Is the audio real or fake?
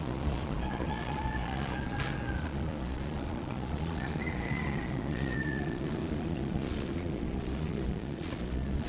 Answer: fake